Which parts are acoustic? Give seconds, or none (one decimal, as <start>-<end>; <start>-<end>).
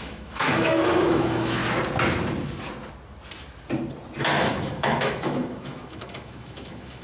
1.6-4.4